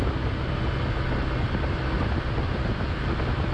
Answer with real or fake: real